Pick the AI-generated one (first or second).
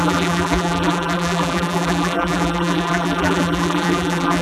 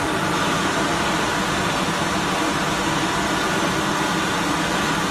first